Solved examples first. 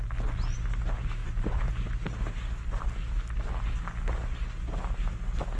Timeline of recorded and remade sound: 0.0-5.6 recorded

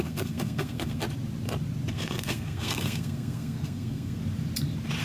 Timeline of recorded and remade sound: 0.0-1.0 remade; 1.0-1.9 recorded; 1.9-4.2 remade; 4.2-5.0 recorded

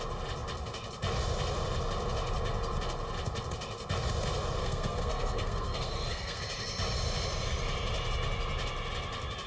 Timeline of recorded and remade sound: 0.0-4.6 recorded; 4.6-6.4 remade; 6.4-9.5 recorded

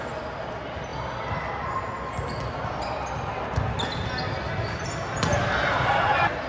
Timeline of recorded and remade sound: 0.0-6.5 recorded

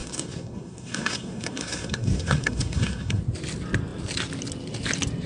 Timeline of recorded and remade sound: 0.0-3.2 remade; 3.2-5.3 recorded

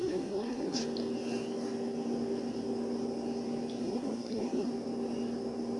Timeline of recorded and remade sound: 0.0-0.8 remade; 0.8-3.8 recorded; 3.8-4.7 remade; 4.7-5.8 recorded